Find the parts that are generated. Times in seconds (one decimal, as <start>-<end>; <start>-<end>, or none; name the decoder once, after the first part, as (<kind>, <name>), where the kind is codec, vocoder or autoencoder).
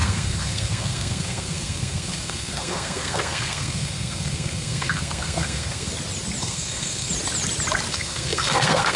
0.0-5.9 (codec, SNAC); 6.4-7.1; 7.9-9.0